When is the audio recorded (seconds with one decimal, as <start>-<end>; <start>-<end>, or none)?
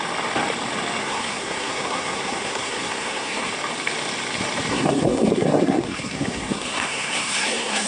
0.0-1.0; 3.5-4.7